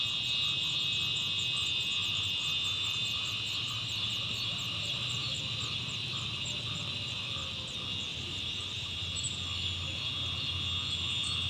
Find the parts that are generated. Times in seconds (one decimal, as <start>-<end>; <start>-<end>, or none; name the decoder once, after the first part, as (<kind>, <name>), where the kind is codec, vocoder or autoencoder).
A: 2.0-5.4 (vocoder, BigVGAN v2); 8.1-9.0